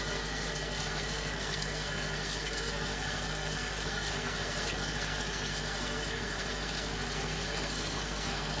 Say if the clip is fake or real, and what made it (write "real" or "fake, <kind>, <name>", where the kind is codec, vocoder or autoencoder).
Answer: fake, codec, SNAC